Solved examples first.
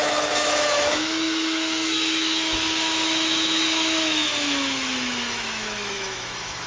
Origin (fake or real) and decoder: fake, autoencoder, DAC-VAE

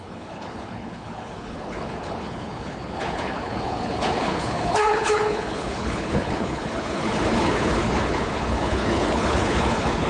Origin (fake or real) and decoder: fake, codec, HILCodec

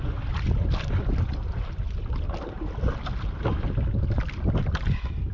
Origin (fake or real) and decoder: real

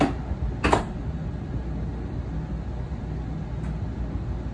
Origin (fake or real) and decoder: real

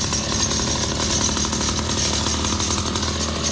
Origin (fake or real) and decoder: real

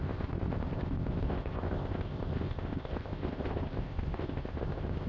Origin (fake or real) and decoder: fake, codec, ZipCodec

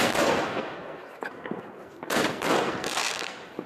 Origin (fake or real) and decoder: fake, codec, SNAC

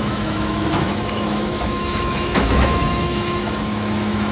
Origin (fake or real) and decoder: fake, autoencoder, DAC-VAE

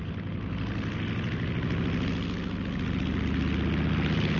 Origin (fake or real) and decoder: real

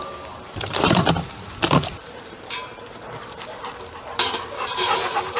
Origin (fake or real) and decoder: fake, vocoder, BigVGAN v2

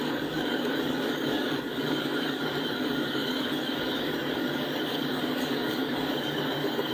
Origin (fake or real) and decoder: fake, codec, DAC